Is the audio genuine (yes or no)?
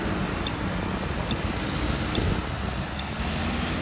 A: yes